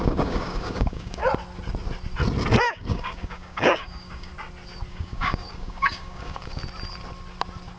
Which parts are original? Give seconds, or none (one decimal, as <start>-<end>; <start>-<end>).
1.2-2.6; 4.3-4.9; 6.6-7.8